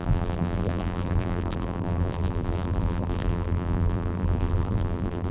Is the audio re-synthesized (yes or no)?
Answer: yes